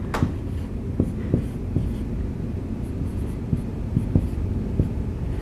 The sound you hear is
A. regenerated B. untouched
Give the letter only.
B